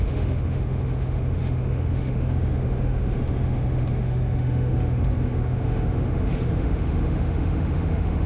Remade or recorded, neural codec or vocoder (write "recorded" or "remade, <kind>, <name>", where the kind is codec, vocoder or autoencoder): remade, autoencoder, DAC-VAE